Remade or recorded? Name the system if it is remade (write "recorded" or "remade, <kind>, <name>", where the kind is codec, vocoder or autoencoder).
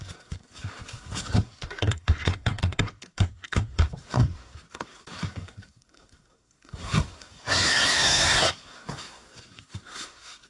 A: remade, codec, SNAC